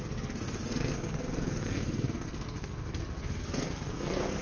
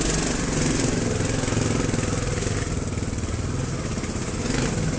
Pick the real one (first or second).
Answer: second